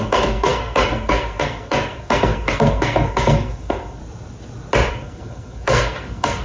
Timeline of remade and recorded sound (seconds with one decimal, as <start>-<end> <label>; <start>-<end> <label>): 0.0-4.0 remade; 4.0-4.9 recorded; 4.9-6.4 remade